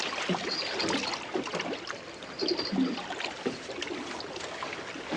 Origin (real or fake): real